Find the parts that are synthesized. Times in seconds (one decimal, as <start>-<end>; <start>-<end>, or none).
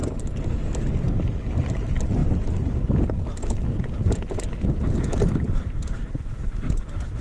0.0-0.9